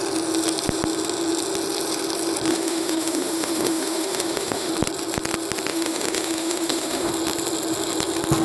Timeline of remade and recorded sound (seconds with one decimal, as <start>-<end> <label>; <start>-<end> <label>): 0.0-2.5 recorded; 2.5-4.7 remade; 4.7-5.7 recorded; 5.7-7.1 remade; 7.1-8.4 recorded